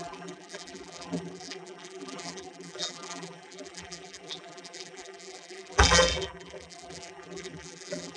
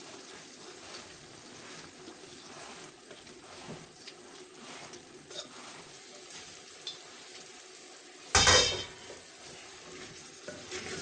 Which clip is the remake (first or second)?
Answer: first